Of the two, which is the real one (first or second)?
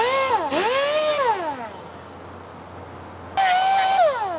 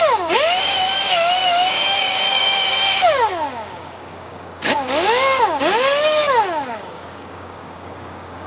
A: first